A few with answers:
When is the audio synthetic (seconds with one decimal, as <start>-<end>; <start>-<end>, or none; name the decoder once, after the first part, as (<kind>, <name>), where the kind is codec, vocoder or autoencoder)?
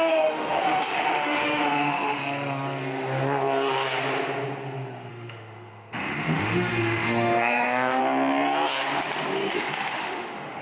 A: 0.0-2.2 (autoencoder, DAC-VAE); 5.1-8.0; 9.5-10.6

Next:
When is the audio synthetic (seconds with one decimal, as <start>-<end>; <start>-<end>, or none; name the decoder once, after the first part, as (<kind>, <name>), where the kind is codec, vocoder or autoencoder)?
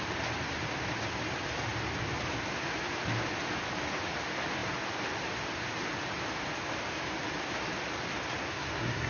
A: 8.4-9.1 (codec, SNAC)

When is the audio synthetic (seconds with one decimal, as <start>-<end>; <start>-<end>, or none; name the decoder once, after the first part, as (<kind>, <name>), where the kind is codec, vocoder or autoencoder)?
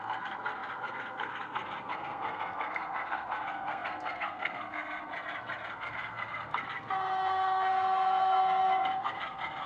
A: 0.0-5.1 (codec, SNAC); 5.7-9.7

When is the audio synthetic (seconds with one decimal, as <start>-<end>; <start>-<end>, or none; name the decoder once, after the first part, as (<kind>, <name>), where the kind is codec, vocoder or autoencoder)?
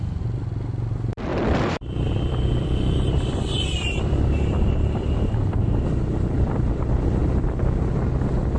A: 1.3-5.6 (vocoder, BigVGAN v2)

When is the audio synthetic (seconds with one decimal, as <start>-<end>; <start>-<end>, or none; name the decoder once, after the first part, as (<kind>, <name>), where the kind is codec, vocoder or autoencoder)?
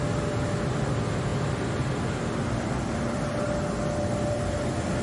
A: none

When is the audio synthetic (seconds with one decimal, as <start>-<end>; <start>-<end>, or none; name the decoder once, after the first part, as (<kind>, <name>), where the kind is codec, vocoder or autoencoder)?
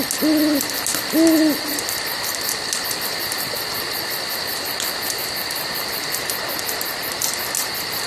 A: none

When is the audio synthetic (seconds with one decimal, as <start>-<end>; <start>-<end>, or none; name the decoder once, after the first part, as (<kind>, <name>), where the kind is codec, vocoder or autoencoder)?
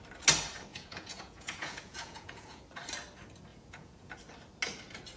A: 0.7-2.6 (vocoder, Vocos); 3.5-4.1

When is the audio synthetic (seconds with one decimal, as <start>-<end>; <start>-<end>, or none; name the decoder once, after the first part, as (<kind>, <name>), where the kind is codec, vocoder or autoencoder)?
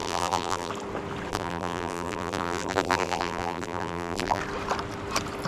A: 0.0-0.7 (vocoder, BigVGAN v2); 1.3-4.4